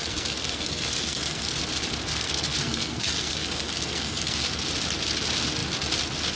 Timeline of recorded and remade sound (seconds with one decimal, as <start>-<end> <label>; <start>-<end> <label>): 0.0-1.6 remade; 1.6-2.1 recorded; 2.1-4.6 remade; 4.6-6.4 recorded